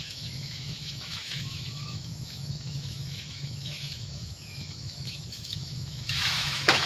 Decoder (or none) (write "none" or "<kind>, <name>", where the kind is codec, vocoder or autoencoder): autoencoder, DAC-VAE